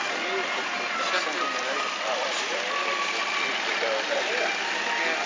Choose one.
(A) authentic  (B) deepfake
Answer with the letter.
A